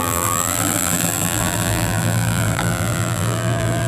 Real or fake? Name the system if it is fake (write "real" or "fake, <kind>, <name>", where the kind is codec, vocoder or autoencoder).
fake, vocoder, BigVGAN v2